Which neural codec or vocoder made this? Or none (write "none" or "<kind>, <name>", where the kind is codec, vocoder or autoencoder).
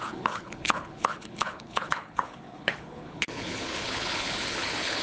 codec, HILCodec